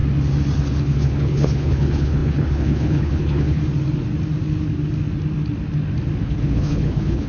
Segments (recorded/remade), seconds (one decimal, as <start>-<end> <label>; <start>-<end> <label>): 0.0-0.8 recorded; 0.8-3.6 remade; 3.6-6.2 recorded; 6.2-7.3 remade